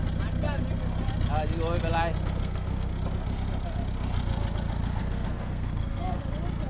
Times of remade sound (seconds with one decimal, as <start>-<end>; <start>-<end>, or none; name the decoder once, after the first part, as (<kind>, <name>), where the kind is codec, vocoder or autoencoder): 2.4-2.9 (codec, SNAC); 5.0-6.2